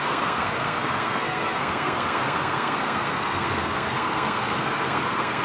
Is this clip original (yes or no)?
no